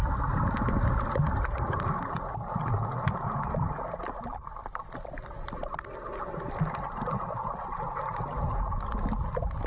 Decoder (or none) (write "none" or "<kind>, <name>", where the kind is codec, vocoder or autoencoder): none